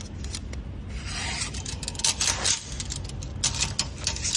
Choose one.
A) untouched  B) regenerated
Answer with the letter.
A